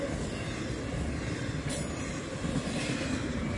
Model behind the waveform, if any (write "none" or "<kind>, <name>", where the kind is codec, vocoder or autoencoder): none